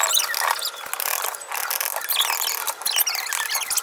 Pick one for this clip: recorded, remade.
recorded